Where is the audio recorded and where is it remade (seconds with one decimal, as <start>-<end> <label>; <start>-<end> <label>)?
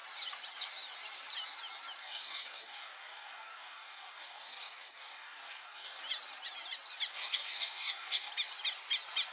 0.0-2.0 recorded; 2.0-6.0 remade; 6.0-7.1 recorded; 7.1-8.3 remade; 8.3-9.3 recorded